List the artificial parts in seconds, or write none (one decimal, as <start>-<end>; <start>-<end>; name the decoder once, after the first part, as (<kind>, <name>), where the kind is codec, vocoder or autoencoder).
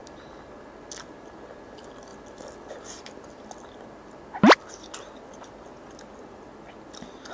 none